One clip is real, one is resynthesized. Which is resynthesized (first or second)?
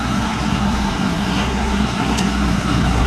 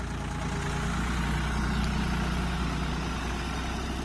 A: first